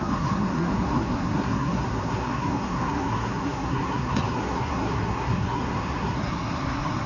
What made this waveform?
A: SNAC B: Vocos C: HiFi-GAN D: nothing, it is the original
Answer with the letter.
A